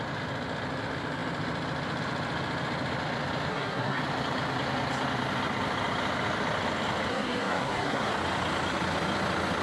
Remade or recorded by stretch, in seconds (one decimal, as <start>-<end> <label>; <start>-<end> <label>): 0.0-3.5 recorded; 3.5-4.0 remade; 4.0-7.1 recorded; 7.1-8.1 remade; 8.1-9.6 recorded